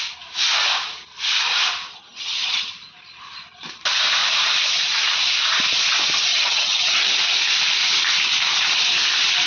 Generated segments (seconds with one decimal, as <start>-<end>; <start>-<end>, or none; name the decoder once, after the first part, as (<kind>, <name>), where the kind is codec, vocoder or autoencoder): 1.9-2.7 (vocoder, HiFi-GAN); 6.3-7.1